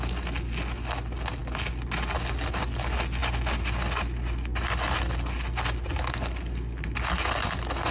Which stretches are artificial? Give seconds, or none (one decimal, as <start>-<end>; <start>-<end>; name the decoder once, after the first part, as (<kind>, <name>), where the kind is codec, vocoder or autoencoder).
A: none